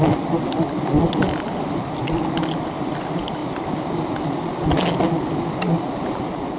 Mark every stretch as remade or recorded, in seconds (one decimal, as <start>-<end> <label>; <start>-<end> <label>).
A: 0.0-6.6 recorded